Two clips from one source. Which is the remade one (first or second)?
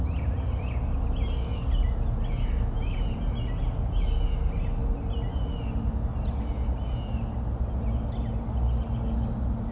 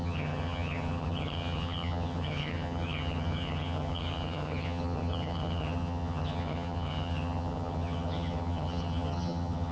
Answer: second